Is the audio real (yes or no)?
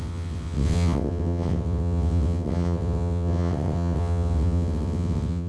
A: no